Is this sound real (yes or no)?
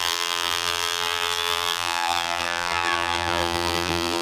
no